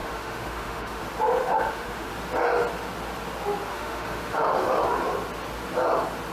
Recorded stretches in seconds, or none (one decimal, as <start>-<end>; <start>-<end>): 1.0-1.4; 2.1-3.7; 4.8-6.3